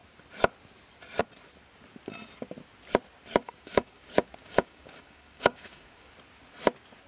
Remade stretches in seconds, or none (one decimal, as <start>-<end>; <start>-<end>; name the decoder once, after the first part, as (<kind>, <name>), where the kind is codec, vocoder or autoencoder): 3.4-6.1 (codec, DAC)